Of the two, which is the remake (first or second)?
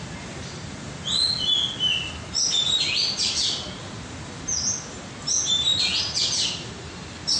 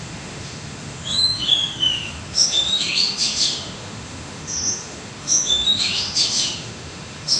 second